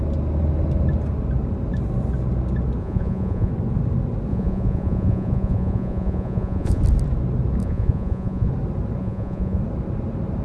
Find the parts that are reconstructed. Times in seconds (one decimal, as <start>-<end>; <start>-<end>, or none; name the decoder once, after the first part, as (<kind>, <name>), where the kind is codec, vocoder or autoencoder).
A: 2.8-3.5 (vocoder, Vocos); 4.3-6.8; 7.6-8.5; 9.0-9.6